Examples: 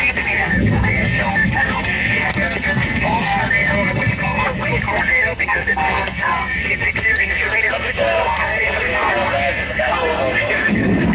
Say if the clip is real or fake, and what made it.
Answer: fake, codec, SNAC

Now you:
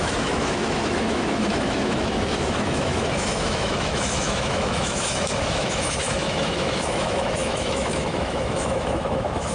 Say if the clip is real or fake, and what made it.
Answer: fake, autoencoder, DAC-VAE